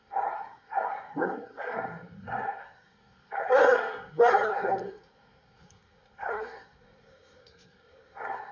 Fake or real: fake